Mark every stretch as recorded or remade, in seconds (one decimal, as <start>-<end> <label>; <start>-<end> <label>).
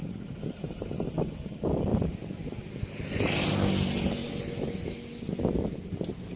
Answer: 0.0-6.4 recorded